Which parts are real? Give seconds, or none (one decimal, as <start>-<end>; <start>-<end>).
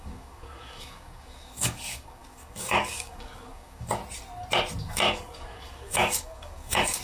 4.0-4.8